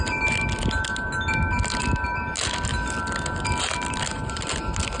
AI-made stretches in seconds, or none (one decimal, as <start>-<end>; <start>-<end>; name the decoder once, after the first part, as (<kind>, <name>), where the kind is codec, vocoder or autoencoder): none